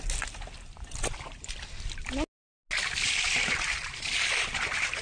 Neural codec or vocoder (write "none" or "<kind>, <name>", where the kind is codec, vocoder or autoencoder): none